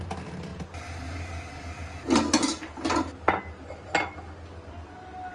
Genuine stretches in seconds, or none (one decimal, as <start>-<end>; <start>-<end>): 0.0-5.3